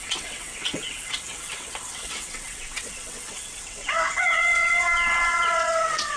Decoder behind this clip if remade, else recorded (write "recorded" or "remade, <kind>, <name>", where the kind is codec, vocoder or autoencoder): remade, vocoder, WaveNeXt